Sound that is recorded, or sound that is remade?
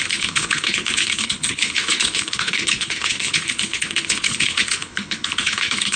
remade